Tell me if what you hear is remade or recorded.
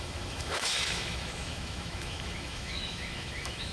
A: remade